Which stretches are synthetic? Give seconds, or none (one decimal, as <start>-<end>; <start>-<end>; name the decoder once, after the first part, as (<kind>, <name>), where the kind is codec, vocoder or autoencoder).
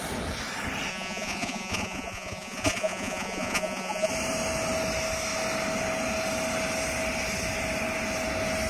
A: 0.9-4.1 (vocoder, Vocos)